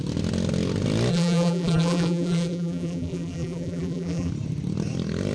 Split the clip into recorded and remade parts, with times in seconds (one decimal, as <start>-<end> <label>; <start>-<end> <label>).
0.0-1.1 recorded; 1.1-4.3 remade; 4.3-5.3 recorded